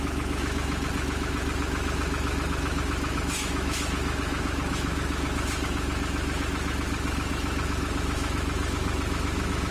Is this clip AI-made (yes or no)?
yes